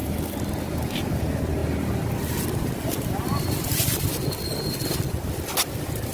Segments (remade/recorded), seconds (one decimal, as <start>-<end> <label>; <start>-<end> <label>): 0.0-1.1 recorded; 1.1-1.6 remade; 1.6-2.8 recorded; 2.8-3.7 remade; 3.7-4.5 recorded; 4.5-6.1 remade